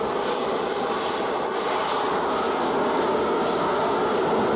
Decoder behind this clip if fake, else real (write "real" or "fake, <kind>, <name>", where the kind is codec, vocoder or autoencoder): real